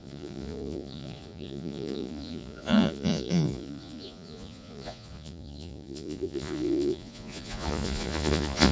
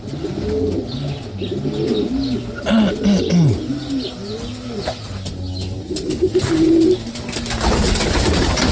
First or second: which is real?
second